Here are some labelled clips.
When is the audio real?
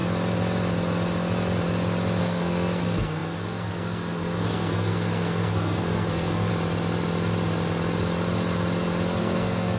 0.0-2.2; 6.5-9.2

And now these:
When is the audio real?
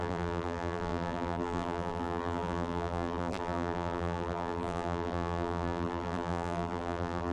none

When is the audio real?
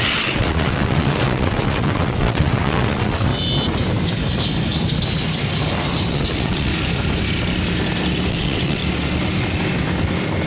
3.3-6.1; 6.7-8.3; 8.8-10.5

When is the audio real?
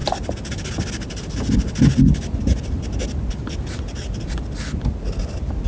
0.0-5.7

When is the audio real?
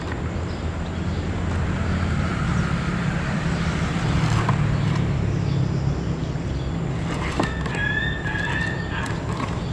0.0-9.7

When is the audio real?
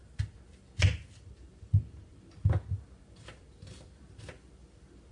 0.0-5.1